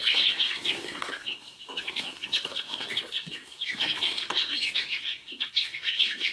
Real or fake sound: fake